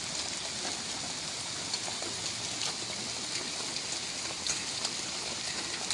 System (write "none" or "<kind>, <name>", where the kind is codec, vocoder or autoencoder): none